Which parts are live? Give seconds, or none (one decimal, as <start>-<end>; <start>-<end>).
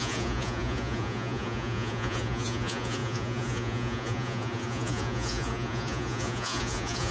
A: none